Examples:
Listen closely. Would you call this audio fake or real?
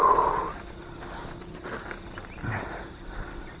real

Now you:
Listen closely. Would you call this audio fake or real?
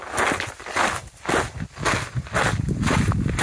real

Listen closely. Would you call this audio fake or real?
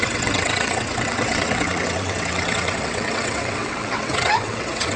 fake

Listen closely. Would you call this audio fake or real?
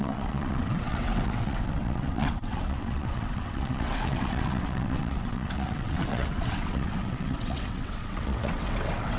fake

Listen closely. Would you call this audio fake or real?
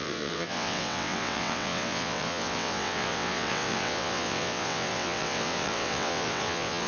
fake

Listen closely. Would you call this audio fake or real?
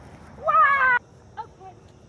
real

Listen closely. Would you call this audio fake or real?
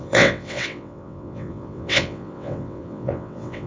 fake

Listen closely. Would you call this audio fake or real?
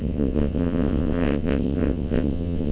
fake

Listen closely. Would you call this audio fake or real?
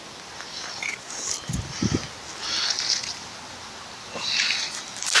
real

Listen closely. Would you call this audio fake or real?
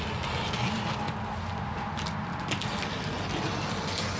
real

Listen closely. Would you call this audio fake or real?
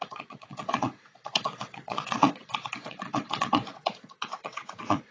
fake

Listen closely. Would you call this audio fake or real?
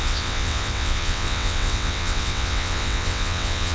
fake